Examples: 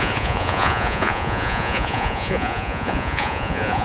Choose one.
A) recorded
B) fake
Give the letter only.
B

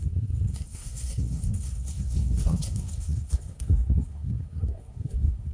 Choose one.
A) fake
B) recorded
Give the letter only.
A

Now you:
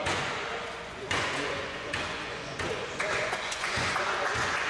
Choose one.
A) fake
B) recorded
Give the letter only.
A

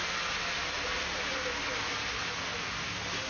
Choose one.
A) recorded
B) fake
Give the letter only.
A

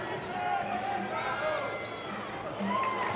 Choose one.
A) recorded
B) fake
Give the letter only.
A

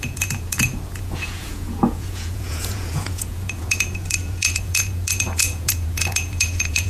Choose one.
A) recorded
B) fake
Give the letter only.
B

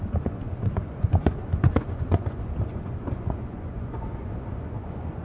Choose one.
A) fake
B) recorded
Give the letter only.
A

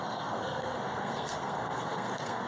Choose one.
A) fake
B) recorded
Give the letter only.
A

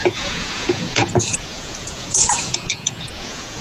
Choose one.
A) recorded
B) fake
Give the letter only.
B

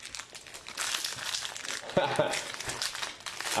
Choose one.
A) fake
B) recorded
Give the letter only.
B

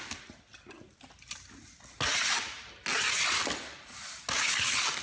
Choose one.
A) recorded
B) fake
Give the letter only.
A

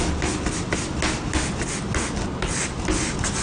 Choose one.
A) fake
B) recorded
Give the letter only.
B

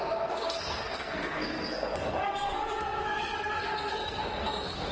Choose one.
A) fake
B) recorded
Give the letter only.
A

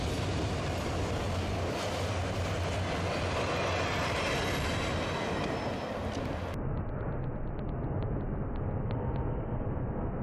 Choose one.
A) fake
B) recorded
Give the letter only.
B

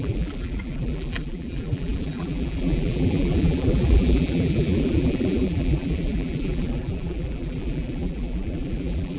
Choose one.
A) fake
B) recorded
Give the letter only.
A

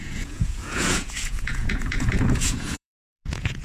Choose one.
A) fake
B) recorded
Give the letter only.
A